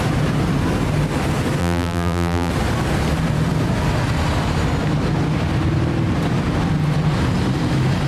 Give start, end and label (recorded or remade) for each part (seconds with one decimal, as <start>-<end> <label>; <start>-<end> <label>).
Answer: 0.0-1.6 recorded; 1.6-2.5 remade; 2.5-8.1 recorded